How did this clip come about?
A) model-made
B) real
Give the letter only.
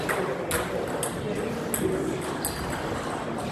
B